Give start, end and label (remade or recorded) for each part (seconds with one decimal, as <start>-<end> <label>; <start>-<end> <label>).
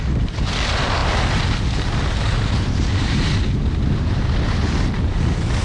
0.0-5.6 recorded